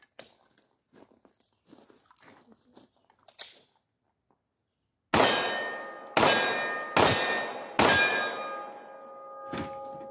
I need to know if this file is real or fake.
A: real